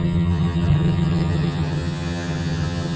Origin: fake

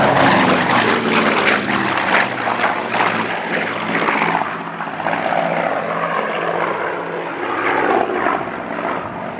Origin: real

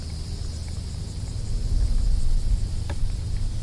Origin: real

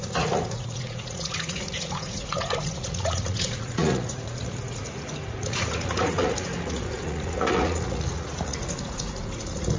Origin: fake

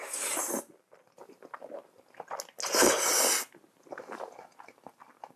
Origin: real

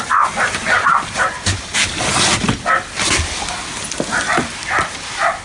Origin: real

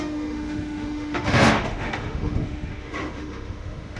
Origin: fake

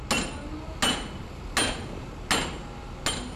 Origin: real